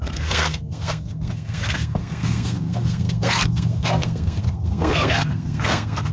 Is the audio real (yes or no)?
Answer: no